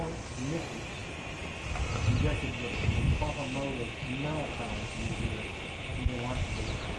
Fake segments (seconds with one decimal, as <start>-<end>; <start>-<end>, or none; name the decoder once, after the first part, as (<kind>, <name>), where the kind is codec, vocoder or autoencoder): none